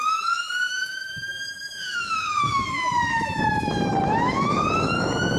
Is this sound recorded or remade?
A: remade